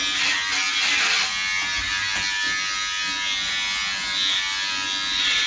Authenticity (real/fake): real